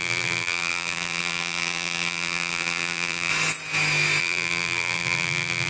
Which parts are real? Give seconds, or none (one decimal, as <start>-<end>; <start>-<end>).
3.3-4.2